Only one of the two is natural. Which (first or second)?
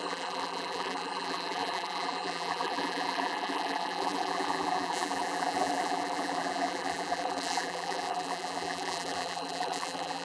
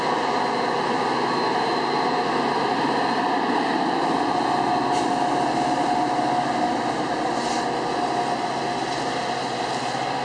second